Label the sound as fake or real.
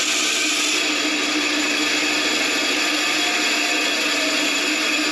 real